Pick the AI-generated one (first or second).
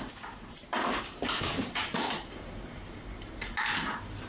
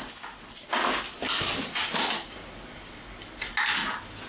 first